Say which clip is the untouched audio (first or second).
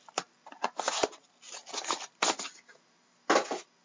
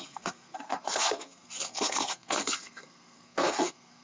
first